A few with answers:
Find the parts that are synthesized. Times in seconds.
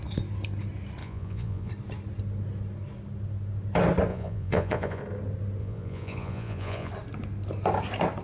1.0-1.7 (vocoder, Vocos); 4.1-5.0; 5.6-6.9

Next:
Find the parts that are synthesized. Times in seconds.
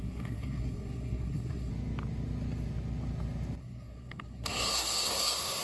0.0-1.7 (codec, SNAC); 3.6-5.6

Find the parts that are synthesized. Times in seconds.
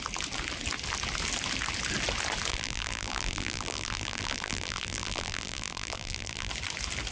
2.5-6.5 (vocoder, BigVGAN v2)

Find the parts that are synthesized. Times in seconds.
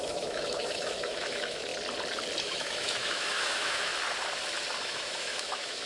0.0-1.7 (autoencoder, DAC-VAE); 2.4-3.9; 4.8-5.9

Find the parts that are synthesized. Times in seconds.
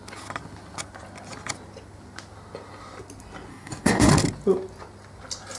3.5-4.1 (codec, DAC)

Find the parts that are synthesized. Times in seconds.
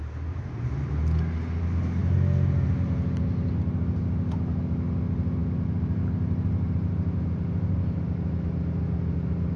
none